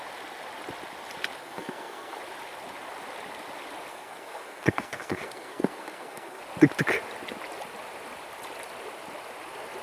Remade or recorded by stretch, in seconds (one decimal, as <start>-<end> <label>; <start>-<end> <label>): 0.0-1.4 recorded; 1.4-2.2 remade; 2.2-3.9 recorded; 3.9-6.4 remade; 6.4-9.8 recorded